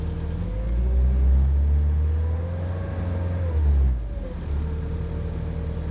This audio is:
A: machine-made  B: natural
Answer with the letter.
B